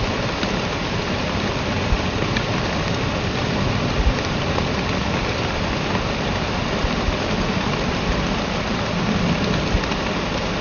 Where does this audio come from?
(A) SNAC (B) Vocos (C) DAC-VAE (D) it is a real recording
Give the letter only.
D